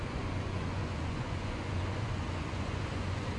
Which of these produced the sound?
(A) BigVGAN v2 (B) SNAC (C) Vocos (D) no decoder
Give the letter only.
C